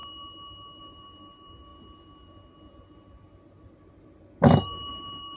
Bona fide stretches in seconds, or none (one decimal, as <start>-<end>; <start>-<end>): 0.0-0.8